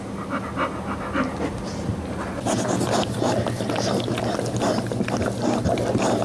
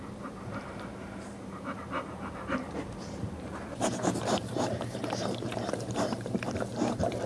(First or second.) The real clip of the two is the first